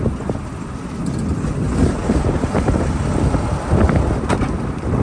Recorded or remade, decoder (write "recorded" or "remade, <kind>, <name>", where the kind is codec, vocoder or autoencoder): recorded